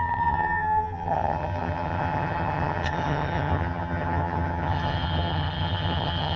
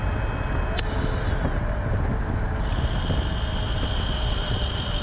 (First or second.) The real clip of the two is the second